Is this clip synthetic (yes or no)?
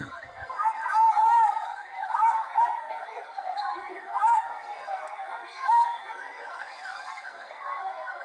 yes